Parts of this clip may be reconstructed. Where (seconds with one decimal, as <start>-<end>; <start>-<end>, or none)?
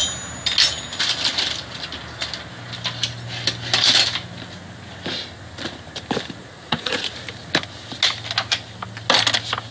6.4-7.1